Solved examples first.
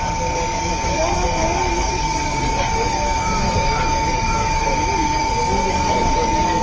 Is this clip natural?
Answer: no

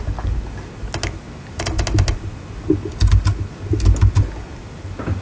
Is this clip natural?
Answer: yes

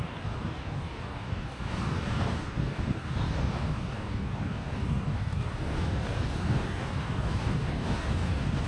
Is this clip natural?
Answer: no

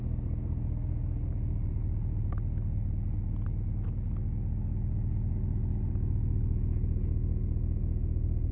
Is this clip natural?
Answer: yes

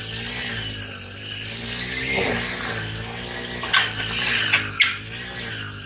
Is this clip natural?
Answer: yes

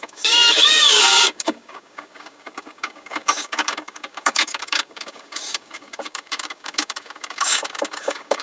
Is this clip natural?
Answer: no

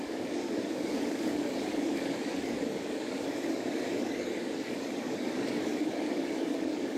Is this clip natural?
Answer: no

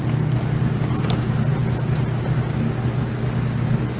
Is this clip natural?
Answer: yes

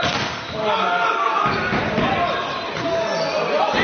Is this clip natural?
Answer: yes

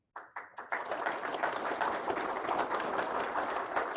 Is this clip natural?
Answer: yes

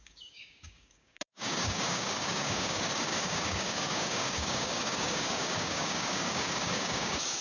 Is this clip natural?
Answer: no